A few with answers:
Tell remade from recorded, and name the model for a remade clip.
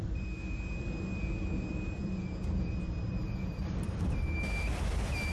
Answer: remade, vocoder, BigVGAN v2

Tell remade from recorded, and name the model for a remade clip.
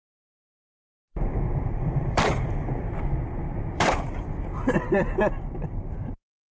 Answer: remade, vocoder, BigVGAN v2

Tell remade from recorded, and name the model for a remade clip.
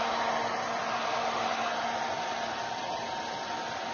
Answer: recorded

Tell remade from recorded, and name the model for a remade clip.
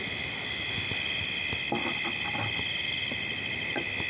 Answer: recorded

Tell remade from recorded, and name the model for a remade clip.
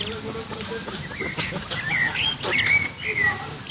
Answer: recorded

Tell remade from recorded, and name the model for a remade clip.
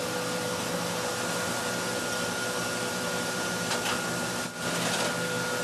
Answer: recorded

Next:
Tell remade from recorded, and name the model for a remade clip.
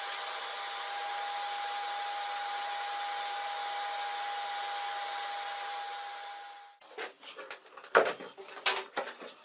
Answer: recorded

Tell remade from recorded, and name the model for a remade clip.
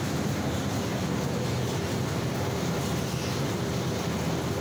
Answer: recorded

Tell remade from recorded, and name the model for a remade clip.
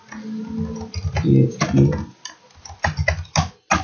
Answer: recorded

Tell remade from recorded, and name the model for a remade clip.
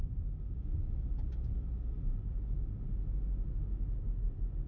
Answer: recorded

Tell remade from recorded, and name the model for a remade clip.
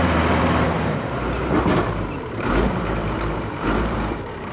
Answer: remade, vocoder, BigVGAN v2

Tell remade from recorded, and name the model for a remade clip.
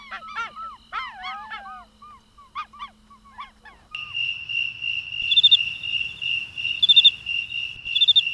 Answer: recorded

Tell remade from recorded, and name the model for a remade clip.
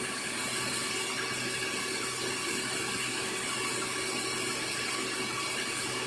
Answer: recorded